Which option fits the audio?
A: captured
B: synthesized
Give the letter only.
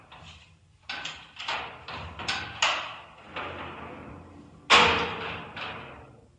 A